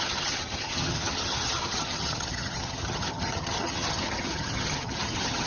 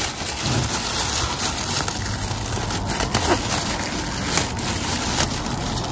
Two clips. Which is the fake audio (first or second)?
first